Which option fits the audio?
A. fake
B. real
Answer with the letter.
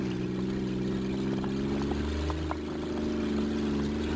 B